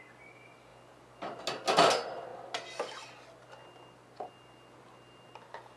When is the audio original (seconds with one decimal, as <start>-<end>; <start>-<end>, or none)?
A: 0.0-5.8